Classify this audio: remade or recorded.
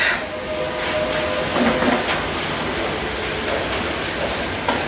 recorded